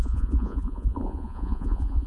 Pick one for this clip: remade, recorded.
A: remade